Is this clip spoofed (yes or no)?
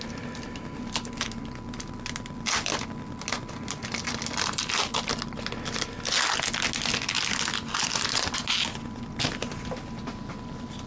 no